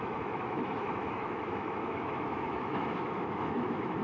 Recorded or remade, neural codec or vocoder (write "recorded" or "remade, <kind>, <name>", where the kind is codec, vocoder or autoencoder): remade, autoencoder, DAC-VAE